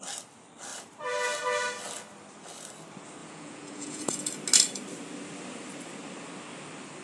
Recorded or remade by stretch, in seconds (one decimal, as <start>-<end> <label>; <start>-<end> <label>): 0.0-3.2 recorded; 3.2-4.3 remade; 4.3-7.0 recorded